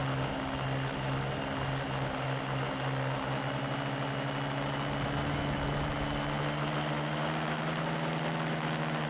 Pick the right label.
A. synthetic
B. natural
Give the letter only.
B